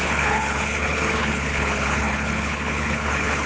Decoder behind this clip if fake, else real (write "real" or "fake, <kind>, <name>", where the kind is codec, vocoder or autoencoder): fake, codec, HILCodec